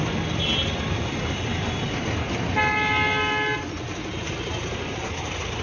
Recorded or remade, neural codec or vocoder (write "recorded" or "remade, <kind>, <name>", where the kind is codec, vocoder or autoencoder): recorded